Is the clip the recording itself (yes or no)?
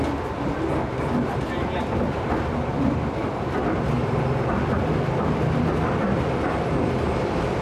yes